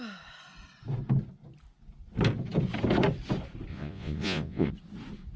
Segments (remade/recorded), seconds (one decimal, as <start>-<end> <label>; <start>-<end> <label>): 0.0-3.7 recorded; 3.7-4.7 remade; 4.7-5.4 recorded